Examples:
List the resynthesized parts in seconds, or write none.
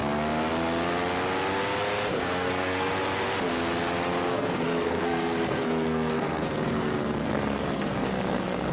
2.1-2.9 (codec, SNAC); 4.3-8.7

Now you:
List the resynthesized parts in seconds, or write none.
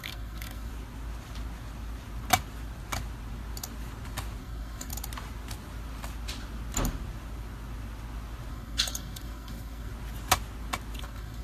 0.0-0.7 (codec, SNAC); 4.4-4.9; 8.5-9.9; 11.0-11.4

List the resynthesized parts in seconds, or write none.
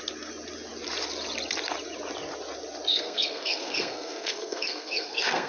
2.9-5.5 (codec, SNAC)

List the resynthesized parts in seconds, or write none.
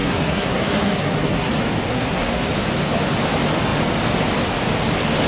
0.0-1.5 (codec, SNAC); 1.9-2.5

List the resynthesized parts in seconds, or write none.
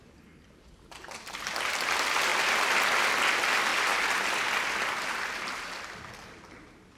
none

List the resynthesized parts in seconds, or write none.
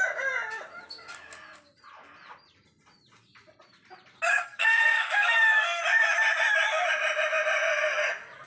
4.3-5.8 (codec, SNAC)